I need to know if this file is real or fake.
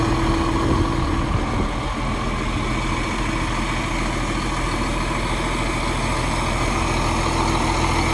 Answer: real